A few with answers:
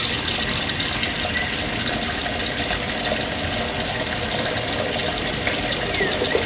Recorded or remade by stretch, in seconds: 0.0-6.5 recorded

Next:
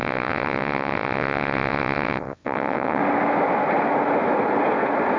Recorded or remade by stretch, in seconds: 0.0-3.0 remade; 3.0-5.2 recorded

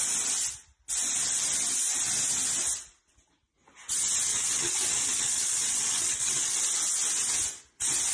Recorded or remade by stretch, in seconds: 0.0-4.3 recorded; 4.3-6.6 remade; 6.6-8.1 recorded

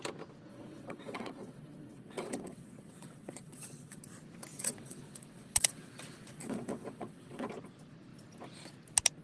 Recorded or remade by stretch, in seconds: 0.0-0.5 recorded; 0.5-4.0 remade; 4.0-4.5 recorded; 4.5-7.5 remade; 7.5-9.2 recorded